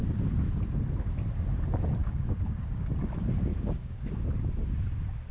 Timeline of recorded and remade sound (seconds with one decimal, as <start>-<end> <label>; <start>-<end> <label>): 0.0-2.0 recorded; 2.0-2.9 remade; 2.9-3.5 recorded; 3.5-4.1 remade; 4.1-5.3 recorded